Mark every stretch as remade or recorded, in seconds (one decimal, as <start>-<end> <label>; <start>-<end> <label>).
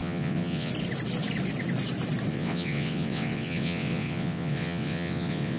0.0-0.7 remade; 0.7-2.3 recorded; 2.3-5.6 remade